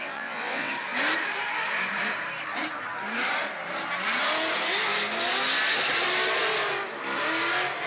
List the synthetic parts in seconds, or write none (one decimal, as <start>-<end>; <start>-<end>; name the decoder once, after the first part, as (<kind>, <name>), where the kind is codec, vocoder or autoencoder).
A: 0.0-0.7 (vocoder, WaveNeXt)